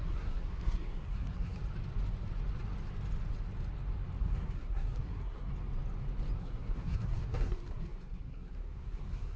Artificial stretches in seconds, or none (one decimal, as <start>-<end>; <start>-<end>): 0.0-1.6; 4.2-5.5; 6.4-9.4